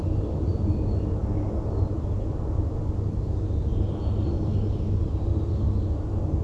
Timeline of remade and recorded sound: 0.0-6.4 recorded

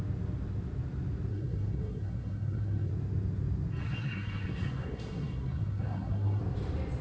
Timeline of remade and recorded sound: 0.0-1.3 recorded; 1.3-2.9 remade; 2.9-3.8 recorded; 3.8-6.4 remade; 6.4-7.0 recorded

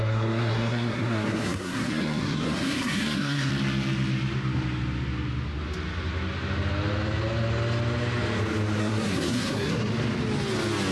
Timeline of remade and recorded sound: 0.0-3.5 remade; 3.5-8.8 recorded; 8.8-9.9 remade; 9.9-10.9 recorded

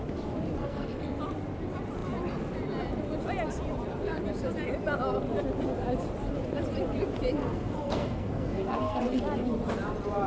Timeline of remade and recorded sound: 0.0-0.6 recorded; 0.6-1.2 remade; 1.2-7.4 recorded; 7.4-9.2 remade; 9.2-10.3 recorded